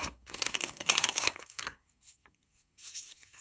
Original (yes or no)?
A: no